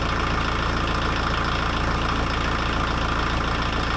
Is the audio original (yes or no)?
yes